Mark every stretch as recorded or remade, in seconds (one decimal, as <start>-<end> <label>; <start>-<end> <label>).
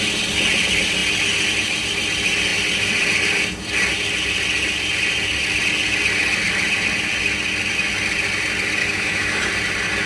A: 0.0-8.8 recorded; 8.8-9.5 remade; 9.5-10.1 recorded